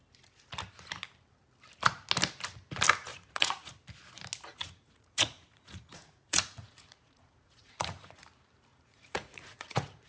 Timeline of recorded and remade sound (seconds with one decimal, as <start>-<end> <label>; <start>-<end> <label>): 0.0-3.1 recorded; 3.1-3.7 remade; 3.7-4.5 recorded; 4.5-8.2 remade; 8.2-8.7 recorded; 8.7-10.1 remade